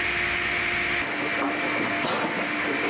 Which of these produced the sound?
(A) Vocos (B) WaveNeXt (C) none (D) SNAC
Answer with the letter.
C